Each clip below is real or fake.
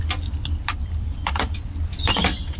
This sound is fake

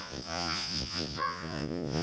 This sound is fake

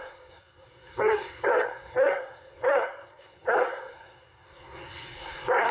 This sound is fake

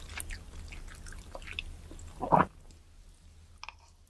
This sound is real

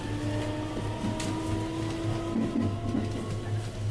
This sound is real